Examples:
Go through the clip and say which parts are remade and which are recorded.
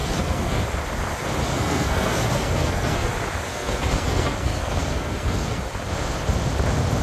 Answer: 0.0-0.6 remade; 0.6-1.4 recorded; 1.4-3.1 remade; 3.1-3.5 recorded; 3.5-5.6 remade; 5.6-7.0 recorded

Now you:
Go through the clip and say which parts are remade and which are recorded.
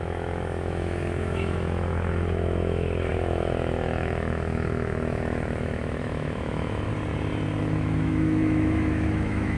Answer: 0.0-6.9 remade; 6.9-7.6 recorded; 7.6-9.6 remade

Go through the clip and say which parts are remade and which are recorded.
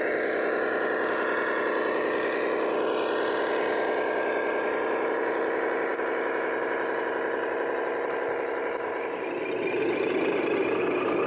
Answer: 0.0-11.3 recorded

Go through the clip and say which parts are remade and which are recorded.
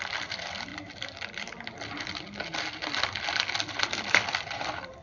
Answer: 0.0-0.7 remade; 0.7-3.7 recorded; 3.7-5.0 remade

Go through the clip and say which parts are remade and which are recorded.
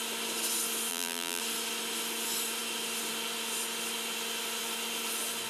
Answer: 0.0-0.9 recorded; 0.9-1.4 remade; 1.4-5.5 recorded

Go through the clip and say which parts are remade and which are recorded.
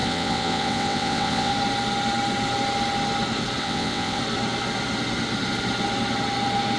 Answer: 0.0-1.5 remade; 1.5-3.6 recorded; 3.6-4.2 remade; 4.2-6.8 recorded